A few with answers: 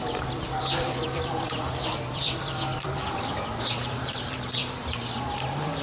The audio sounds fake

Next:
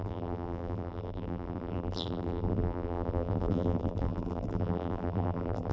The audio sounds fake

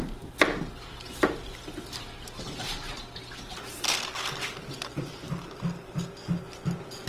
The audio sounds real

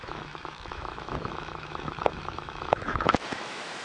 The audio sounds fake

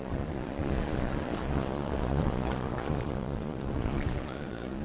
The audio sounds fake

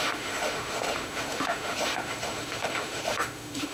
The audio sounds fake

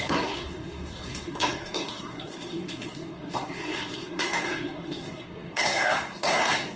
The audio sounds fake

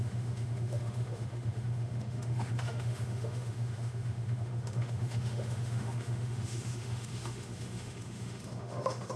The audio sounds fake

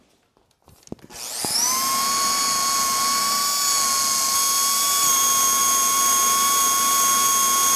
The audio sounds real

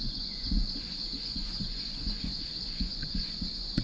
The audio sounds fake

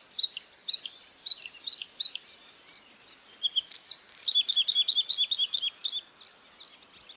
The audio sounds real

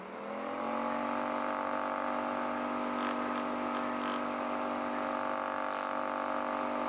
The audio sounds real